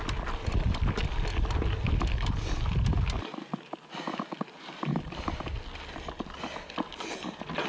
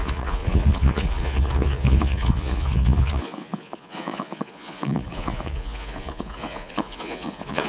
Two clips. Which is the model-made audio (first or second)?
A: second